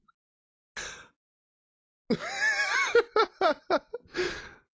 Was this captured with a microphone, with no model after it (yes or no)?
yes